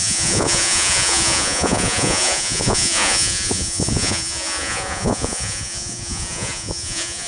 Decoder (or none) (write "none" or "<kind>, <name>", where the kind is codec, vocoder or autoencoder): vocoder, Vocos